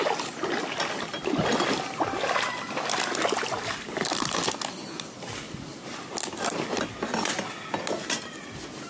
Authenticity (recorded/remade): recorded